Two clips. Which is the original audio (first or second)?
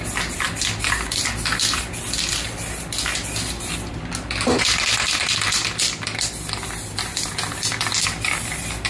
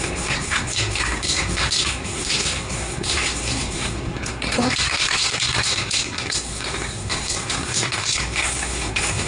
first